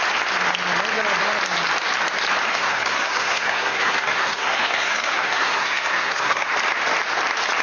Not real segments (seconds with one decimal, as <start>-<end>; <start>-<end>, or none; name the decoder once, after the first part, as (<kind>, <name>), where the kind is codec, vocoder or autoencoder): 2.5-6.5 (codec, SNAC)